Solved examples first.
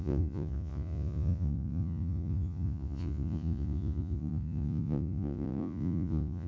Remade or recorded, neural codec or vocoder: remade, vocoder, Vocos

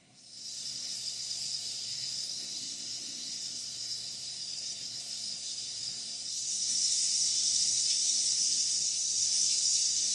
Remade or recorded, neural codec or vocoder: remade, codec, SNAC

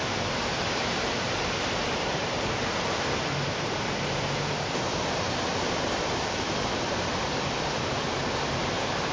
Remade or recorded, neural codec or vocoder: remade, vocoder, BigVGAN v2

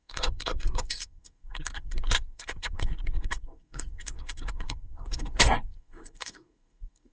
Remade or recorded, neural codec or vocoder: remade, codec, SNAC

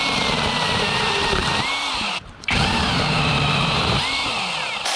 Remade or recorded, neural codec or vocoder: remade, vocoder, BigVGAN v2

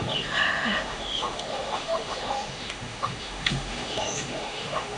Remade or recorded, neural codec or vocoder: remade, autoencoder, DAC-VAE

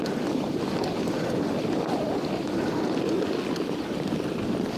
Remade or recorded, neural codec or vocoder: recorded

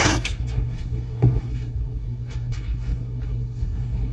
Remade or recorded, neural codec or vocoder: remade, codec, SNAC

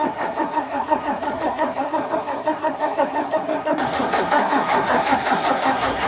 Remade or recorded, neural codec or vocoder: remade, codec, SNAC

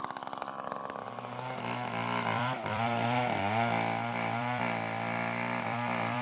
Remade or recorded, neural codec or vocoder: remade, vocoder, BigVGAN v2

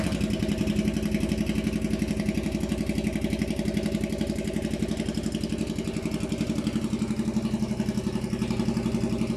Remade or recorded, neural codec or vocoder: recorded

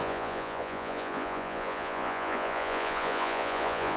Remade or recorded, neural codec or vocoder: remade, vocoder, Vocos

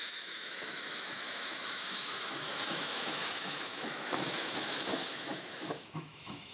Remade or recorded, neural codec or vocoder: remade, autoencoder, DAC-VAE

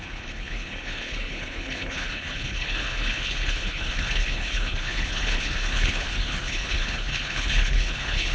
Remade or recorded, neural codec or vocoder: remade, codec, HILCodec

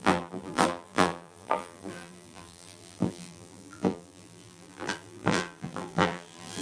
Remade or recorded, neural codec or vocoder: remade, vocoder, BigVGAN v2